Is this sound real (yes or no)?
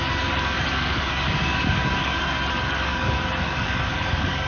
no